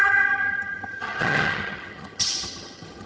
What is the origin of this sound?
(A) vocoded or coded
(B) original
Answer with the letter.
A